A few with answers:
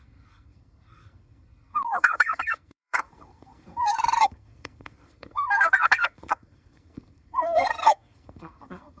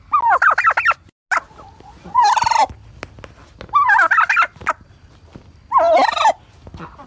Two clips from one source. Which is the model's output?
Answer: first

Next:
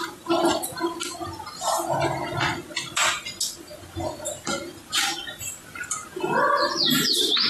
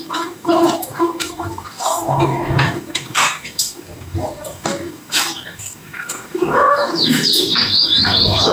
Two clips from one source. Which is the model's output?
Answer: second